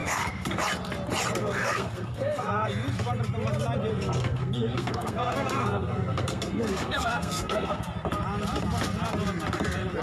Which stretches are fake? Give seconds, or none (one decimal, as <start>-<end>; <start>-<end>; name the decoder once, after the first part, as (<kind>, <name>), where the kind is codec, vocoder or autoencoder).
0.0-0.6 (codec, SNAC); 1.4-2.7; 3.9-7.8